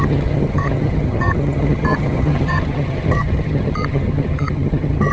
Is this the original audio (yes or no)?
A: no